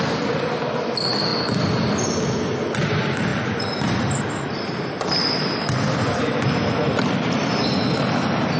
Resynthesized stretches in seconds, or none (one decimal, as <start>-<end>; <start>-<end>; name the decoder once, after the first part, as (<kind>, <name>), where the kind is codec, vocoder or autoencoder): 3.3-4.1 (vocoder, BigVGAN v2)